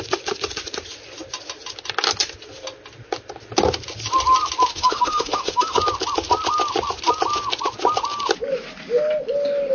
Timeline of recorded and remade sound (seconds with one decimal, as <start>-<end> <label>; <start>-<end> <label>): 0.0-4.7 recorded; 4.7-5.8 remade; 5.8-9.7 recorded